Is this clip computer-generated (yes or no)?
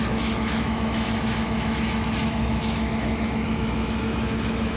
yes